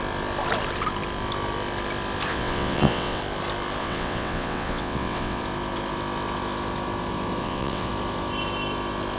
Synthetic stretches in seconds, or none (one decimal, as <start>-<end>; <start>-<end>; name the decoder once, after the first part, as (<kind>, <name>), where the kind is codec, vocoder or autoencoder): 2.3-3.2 (vocoder, WaveNeXt); 3.8-5.4; 7.4-7.9